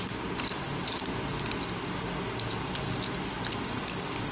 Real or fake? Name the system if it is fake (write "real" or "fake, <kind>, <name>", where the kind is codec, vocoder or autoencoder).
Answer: real